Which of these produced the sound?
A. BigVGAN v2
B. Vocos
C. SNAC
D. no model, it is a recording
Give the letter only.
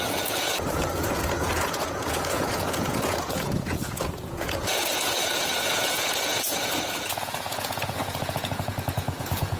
B